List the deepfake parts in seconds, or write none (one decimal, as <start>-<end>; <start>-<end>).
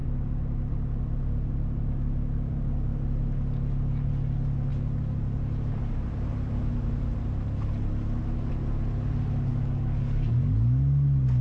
9.5-11.4